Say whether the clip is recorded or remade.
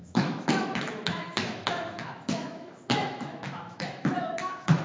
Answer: remade